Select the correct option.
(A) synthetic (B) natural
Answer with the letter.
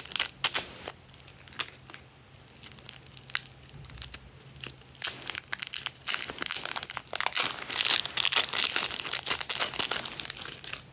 B